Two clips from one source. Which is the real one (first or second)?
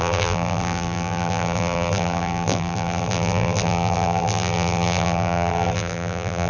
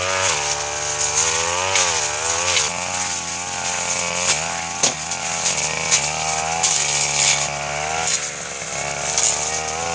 second